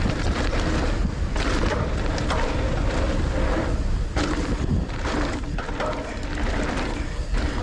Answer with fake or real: real